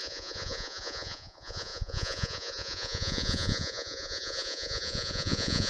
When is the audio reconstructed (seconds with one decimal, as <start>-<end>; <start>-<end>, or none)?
0.0-5.7